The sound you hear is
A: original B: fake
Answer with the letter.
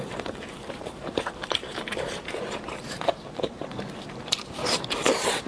B